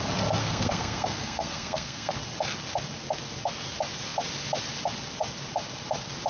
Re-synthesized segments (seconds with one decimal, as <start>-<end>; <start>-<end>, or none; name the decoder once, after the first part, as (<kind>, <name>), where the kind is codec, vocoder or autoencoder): 0.4-2.1 (codec, SNAC)